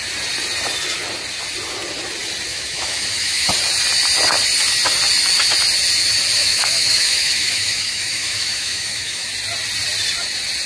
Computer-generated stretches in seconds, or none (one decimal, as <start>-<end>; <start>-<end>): 2.5-3.5; 6.4-9.3